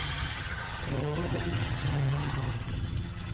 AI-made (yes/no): yes